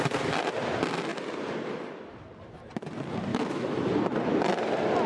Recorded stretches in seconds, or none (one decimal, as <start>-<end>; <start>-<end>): 0.0-3.3; 3.9-5.1